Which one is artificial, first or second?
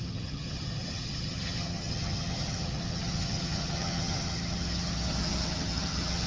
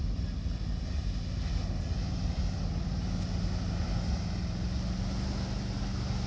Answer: first